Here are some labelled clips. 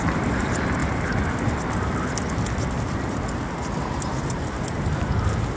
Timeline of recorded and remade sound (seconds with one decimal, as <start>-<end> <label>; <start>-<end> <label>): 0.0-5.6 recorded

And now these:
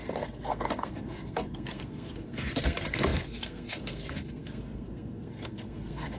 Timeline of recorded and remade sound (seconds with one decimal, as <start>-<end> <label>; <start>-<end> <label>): 0.0-6.2 remade

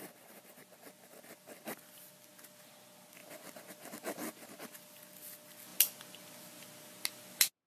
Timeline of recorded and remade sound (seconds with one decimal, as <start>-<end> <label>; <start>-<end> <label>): 0.0-7.7 recorded